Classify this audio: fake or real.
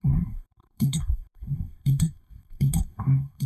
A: fake